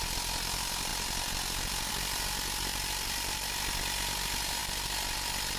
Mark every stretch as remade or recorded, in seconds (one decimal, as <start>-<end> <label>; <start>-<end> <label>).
0.0-2.7 recorded; 2.7-3.6 remade; 3.6-4.6 recorded; 4.6-5.6 remade